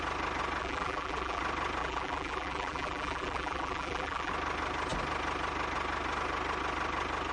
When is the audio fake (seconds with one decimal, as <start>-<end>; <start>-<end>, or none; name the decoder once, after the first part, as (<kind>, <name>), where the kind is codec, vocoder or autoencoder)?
0.6-1.4 (vocoder, BigVGAN v2); 1.8-4.3